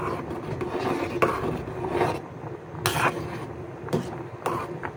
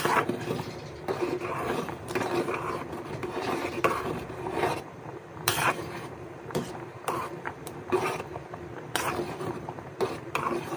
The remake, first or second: second